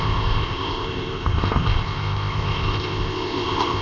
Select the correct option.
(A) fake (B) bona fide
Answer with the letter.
A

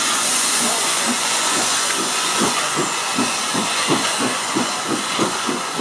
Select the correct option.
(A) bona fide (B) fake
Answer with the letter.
B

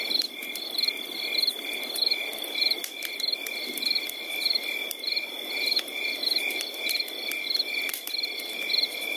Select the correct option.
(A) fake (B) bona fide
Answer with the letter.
B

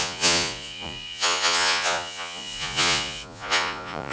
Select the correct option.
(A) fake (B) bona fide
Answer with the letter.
A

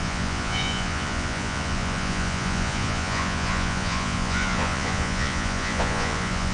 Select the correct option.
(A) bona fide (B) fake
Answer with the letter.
B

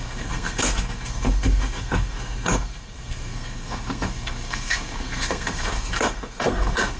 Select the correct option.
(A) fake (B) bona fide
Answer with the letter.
A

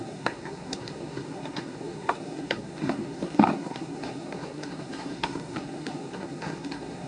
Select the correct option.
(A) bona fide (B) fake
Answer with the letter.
B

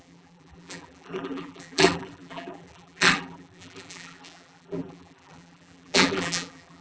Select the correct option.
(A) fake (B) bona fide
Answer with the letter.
A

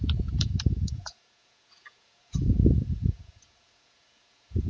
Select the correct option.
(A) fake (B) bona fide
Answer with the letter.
A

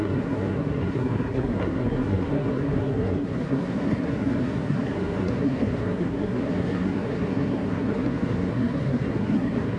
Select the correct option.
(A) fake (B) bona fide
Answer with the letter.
A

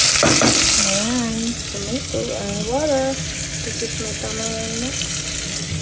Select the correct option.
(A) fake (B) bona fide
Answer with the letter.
B